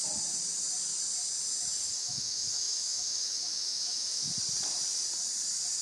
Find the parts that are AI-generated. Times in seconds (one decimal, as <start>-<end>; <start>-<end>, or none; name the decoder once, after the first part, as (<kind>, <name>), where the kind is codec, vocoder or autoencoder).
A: 2.0-4.3 (autoencoder, DAC-VAE)